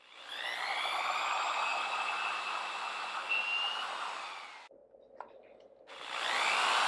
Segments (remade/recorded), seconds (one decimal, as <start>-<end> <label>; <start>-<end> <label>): 0.0-6.9 recorded